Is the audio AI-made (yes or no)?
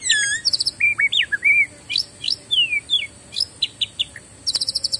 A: no